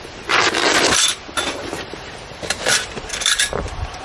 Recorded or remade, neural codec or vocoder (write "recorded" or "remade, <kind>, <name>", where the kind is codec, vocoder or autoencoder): remade, vocoder, BigVGAN v2